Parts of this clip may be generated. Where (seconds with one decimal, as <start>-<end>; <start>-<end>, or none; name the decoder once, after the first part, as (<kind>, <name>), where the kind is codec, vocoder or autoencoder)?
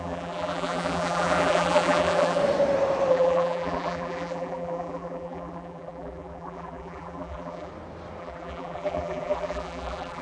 0.0-2.4 (vocoder, BigVGAN v2); 3.1-7.7; 8.2-10.2